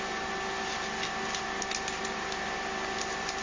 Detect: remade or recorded recorded